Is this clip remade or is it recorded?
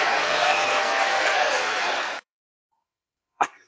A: remade